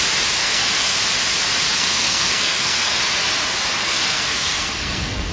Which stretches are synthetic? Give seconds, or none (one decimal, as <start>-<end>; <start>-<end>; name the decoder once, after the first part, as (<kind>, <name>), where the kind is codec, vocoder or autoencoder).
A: 0.4-1.0 (codec, SNAC); 1.7-3.0; 3.8-5.3